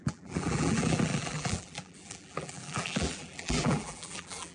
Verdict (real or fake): fake